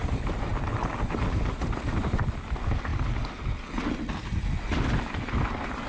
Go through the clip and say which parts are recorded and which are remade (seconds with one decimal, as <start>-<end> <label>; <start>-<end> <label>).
0.0-5.9 recorded

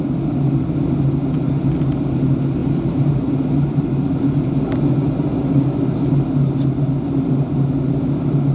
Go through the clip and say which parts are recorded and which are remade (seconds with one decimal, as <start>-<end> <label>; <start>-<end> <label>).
0.0-8.5 recorded

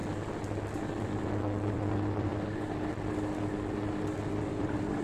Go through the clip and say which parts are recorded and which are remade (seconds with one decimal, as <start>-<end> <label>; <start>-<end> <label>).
0.0-1.7 recorded; 1.7-2.3 remade; 2.3-4.3 recorded; 4.3-5.0 remade

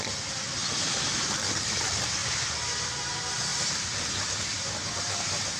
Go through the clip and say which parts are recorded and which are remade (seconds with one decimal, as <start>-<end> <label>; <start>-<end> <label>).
0.0-0.6 recorded; 0.6-1.5 remade; 1.5-2.2 recorded; 2.2-2.9 remade; 2.9-3.5 recorded; 3.5-4.3 remade; 4.3-5.6 recorded

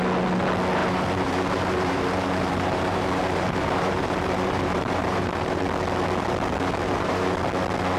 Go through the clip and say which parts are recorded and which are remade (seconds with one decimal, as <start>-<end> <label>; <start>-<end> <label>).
0.0-0.8 recorded; 0.8-5.6 remade; 5.6-6.8 recorded; 6.8-7.4 remade; 7.4-8.0 recorded